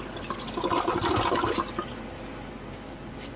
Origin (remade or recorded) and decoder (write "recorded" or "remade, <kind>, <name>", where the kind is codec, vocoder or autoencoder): recorded